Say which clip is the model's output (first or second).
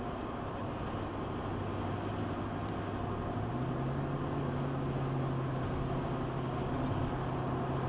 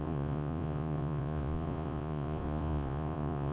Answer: second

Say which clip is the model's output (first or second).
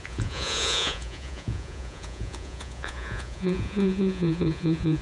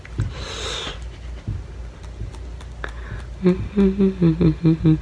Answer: first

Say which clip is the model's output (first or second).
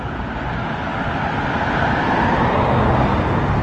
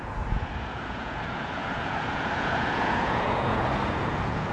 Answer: second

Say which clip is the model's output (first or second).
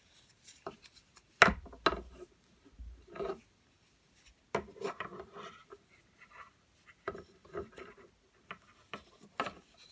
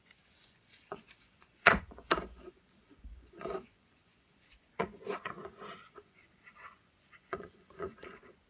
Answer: second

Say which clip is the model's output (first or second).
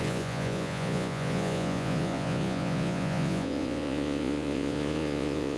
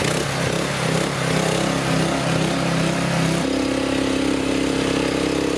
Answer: first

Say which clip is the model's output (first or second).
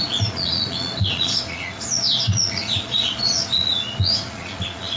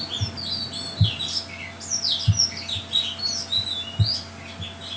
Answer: first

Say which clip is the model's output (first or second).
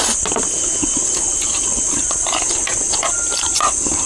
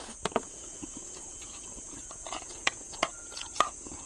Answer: second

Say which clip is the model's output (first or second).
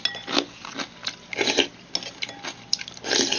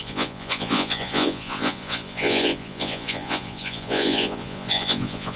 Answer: second